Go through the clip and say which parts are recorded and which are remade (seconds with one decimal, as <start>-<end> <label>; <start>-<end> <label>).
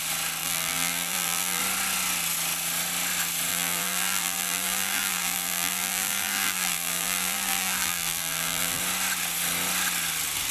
0.0-0.4 recorded; 0.4-1.6 remade; 1.6-3.5 recorded; 3.5-8.8 remade; 8.8-10.5 recorded